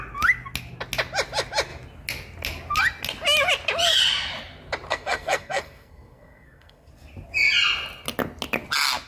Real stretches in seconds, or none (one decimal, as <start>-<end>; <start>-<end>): 0.0-4.9; 6.9-9.1